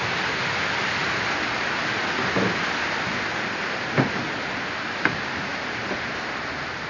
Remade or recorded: recorded